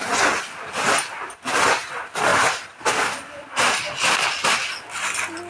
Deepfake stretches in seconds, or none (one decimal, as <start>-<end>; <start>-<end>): none